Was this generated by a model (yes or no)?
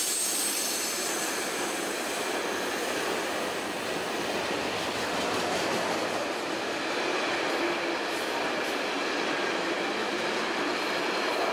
no